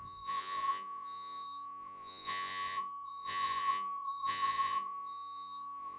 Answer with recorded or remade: remade